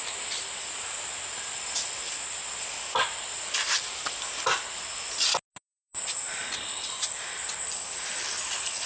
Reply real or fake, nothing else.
real